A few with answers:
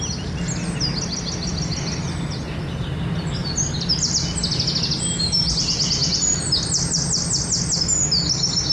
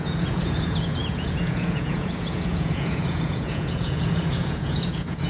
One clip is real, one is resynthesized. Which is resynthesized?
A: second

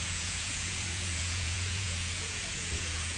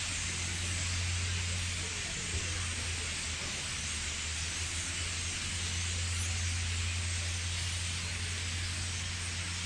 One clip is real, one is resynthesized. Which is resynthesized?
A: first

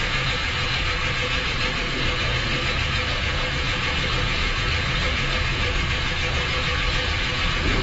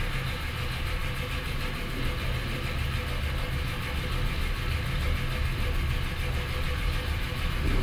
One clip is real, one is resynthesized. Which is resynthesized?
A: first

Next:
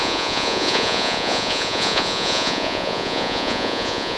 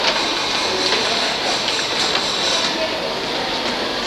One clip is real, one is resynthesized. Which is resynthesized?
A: first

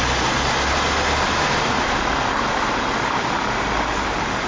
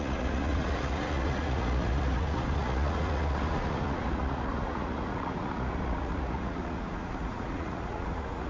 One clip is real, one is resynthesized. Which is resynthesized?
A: second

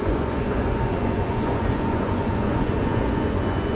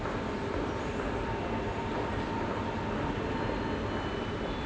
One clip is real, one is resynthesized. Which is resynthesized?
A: first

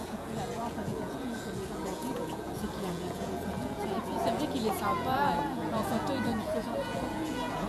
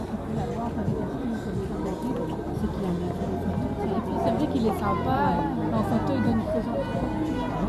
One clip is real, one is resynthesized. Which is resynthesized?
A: first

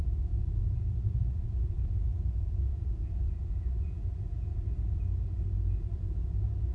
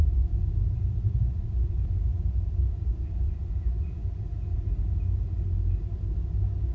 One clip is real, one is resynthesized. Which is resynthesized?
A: first